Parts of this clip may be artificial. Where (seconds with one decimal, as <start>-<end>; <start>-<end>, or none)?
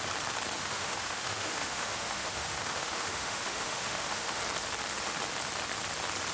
0.6-4.4